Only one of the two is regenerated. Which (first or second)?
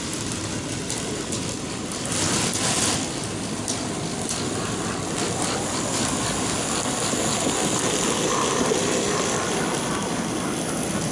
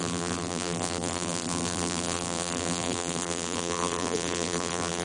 second